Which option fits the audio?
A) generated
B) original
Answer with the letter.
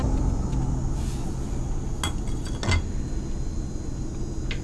B